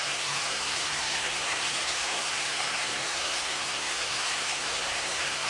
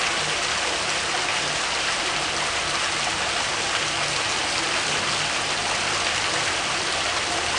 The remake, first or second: first